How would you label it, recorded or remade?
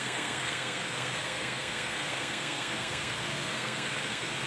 remade